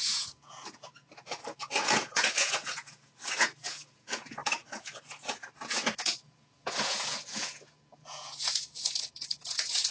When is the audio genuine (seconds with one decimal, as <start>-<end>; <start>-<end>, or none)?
none